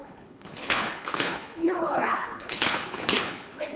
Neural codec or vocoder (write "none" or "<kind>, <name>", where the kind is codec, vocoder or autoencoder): codec, HILCodec